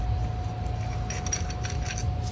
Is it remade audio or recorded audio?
recorded